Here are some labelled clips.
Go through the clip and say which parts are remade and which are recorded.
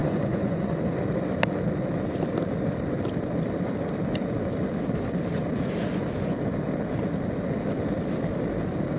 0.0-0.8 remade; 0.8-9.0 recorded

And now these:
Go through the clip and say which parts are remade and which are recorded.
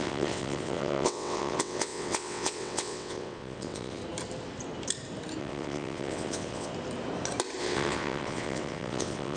0.0-4.0 remade; 4.0-5.4 recorded; 5.4-6.7 remade; 6.7-7.6 recorded; 7.6-9.4 remade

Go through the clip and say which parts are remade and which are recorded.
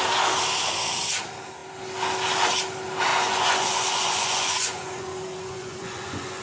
0.0-3.1 recorded; 3.1-6.4 remade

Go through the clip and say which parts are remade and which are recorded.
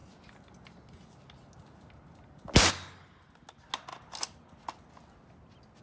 0.0-5.8 recorded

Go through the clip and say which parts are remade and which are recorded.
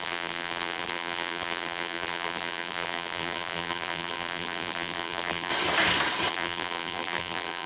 0.0-5.5 remade; 5.5-6.3 recorded; 6.3-7.7 remade